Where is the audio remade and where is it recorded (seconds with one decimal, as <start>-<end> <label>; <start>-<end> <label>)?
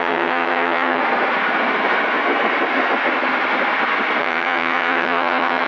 0.0-1.0 remade; 1.0-4.2 recorded; 4.2-5.7 remade